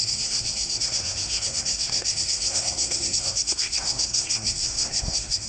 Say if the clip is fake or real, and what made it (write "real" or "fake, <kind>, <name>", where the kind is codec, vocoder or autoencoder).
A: fake, codec, SNAC